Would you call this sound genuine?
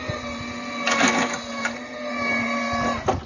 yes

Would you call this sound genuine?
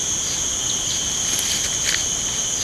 yes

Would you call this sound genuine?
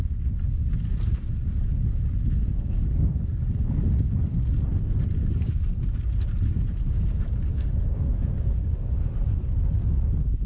yes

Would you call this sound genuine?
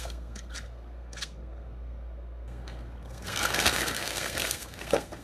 no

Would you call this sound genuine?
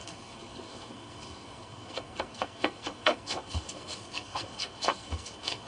no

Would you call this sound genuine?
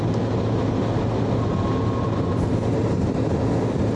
yes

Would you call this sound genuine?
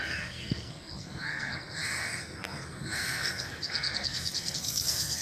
no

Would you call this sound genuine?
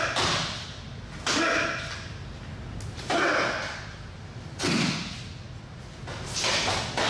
yes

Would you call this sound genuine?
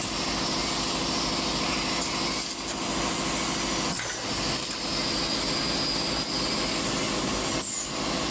yes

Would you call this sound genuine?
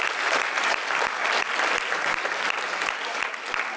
yes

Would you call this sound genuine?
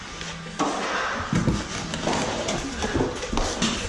yes